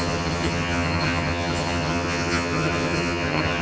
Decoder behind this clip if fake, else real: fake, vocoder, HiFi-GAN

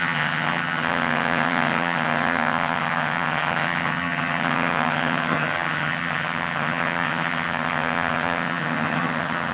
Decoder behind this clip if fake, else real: fake, vocoder, HiFi-GAN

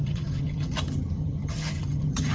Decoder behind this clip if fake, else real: fake, vocoder, HiFi-GAN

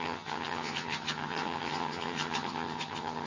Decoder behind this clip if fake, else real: fake, vocoder, HiFi-GAN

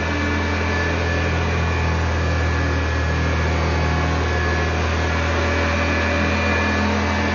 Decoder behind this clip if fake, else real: real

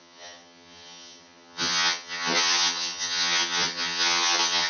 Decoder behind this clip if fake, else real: fake, vocoder, HiFi-GAN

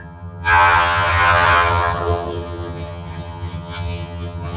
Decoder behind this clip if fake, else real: fake, vocoder, HiFi-GAN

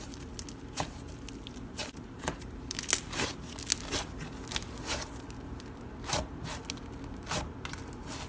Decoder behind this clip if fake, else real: real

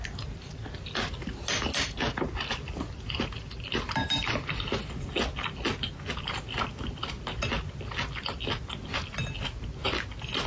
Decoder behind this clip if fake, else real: real